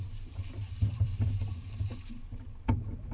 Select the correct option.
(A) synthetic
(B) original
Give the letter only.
A